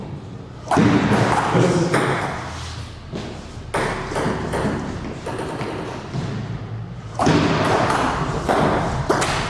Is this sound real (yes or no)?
yes